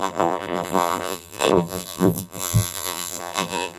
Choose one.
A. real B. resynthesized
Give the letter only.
B